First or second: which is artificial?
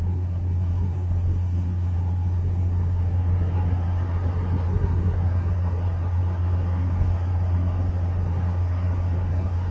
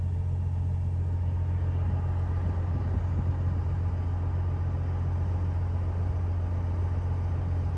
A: first